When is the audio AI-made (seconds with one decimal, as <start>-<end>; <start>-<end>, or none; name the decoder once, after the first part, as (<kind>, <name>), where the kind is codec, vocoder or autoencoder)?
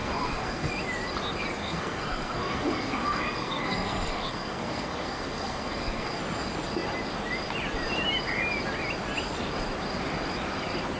0.0-0.7 (codec, SNAC); 1.6-6.2